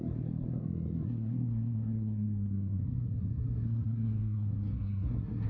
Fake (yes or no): yes